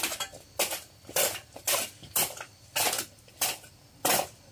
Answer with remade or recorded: recorded